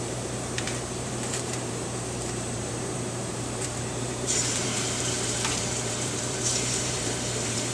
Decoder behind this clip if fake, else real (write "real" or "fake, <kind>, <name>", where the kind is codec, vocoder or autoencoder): fake, vocoder, BigVGAN v2